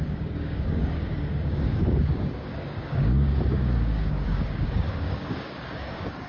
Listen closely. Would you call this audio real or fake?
fake